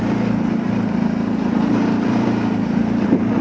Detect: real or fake fake